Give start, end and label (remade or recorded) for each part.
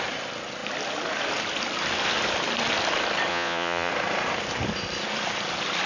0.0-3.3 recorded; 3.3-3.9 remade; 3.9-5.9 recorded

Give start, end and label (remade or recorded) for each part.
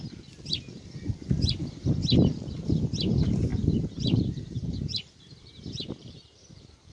0.0-3.5 recorded; 3.5-6.9 remade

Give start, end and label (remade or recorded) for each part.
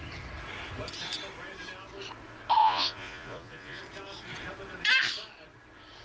0.0-2.6 recorded; 2.6-3.8 remade; 3.8-6.0 recorded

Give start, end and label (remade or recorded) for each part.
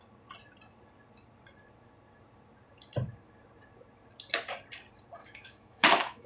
0.0-5.2 recorded; 5.2-6.3 remade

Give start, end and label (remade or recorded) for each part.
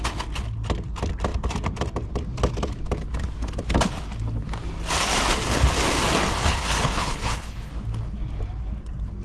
0.0-6.5 recorded; 6.5-7.7 remade; 7.7-9.2 recorded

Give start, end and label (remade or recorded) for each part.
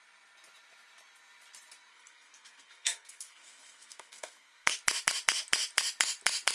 0.0-1.9 recorded; 1.9-4.7 remade; 4.7-6.5 recorded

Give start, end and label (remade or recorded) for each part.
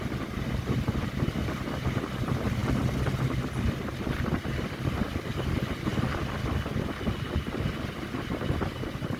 0.0-9.2 recorded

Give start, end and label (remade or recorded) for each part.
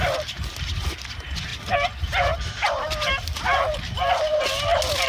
0.0-5.1 recorded